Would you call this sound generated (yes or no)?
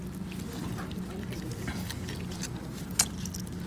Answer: no